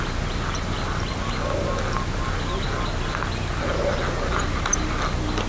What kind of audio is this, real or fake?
real